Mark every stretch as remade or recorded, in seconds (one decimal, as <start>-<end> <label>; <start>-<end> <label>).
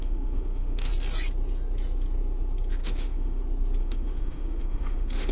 0.0-0.9 remade; 0.9-2.8 recorded; 2.8-3.4 remade; 3.4-3.8 recorded; 3.8-5.3 remade